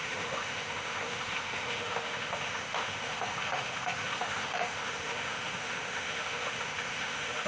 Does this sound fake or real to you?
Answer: fake